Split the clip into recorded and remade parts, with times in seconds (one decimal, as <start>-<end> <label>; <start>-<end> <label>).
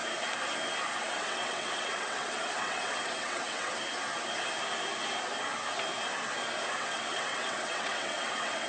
0.0-1.0 recorded; 1.0-3.7 remade; 3.7-6.8 recorded; 6.8-8.7 remade